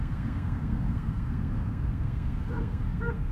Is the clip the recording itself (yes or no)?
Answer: no